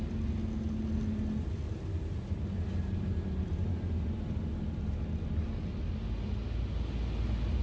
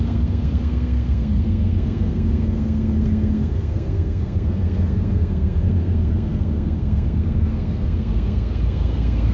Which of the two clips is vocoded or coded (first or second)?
second